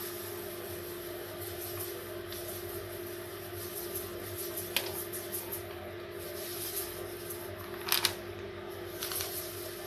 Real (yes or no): yes